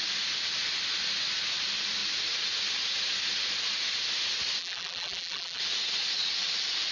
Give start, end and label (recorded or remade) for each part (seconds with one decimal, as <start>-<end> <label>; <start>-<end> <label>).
0.0-4.6 recorded; 4.6-5.6 remade; 5.6-6.9 recorded